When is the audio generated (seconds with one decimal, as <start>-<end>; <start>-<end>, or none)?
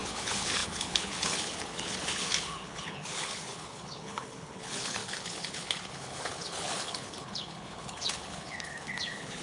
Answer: 0.0-9.4